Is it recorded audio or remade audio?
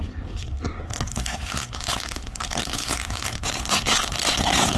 remade